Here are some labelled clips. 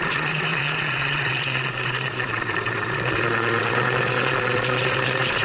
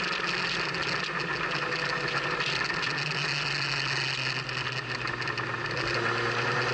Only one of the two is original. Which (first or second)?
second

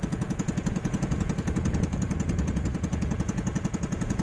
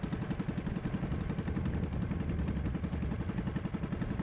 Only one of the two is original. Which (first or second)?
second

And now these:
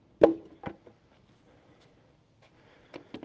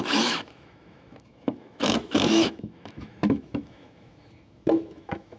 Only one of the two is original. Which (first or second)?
first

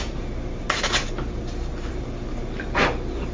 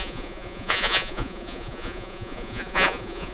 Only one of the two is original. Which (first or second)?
first